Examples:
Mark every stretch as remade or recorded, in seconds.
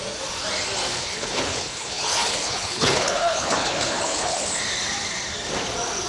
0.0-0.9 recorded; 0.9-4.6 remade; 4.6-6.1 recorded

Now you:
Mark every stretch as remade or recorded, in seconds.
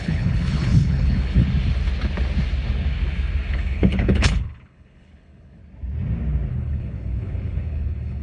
0.0-1.4 remade; 1.4-3.5 recorded; 3.5-5.6 remade; 5.6-6.5 recorded; 6.5-8.2 remade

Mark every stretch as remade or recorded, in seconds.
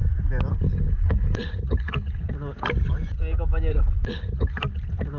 0.0-0.5 recorded; 0.5-2.3 remade; 2.3-3.7 recorded; 3.7-4.5 remade; 4.5-5.2 recorded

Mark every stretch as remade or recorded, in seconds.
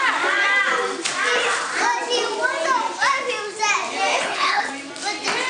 0.0-4.1 recorded; 4.1-4.7 remade; 4.7-5.5 recorded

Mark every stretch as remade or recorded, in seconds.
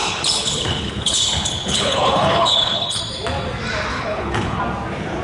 0.0-3.0 remade; 3.0-3.9 recorded; 3.9-4.6 remade; 4.6-5.2 recorded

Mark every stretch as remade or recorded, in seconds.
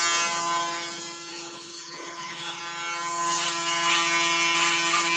0.0-1.3 recorded; 1.3-2.6 remade; 2.6-5.2 recorded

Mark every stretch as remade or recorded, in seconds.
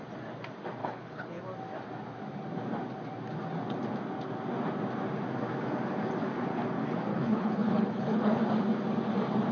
0.0-0.8 recorded; 0.8-1.4 remade; 1.4-7.1 recorded; 7.1-8.4 remade; 8.4-9.5 recorded